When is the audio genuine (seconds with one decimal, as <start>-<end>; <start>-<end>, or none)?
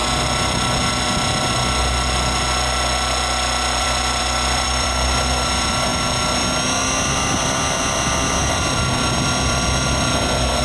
0.0-3.8; 5.9-8.5